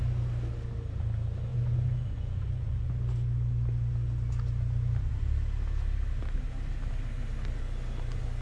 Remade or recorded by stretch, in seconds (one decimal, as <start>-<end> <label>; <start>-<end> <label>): 0.0-1.5 recorded; 1.5-2.9 remade; 2.9-8.4 recorded